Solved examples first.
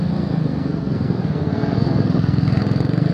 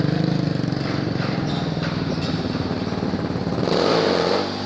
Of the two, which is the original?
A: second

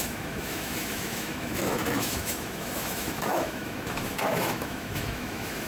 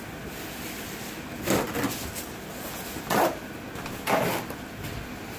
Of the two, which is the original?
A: second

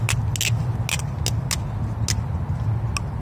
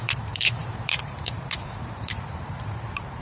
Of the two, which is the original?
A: first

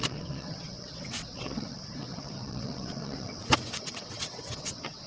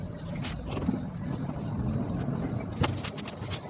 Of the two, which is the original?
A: second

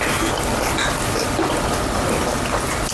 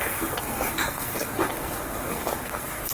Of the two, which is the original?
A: first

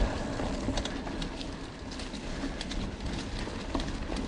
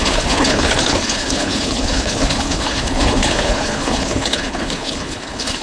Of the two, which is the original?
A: first